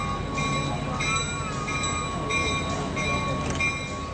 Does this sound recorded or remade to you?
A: recorded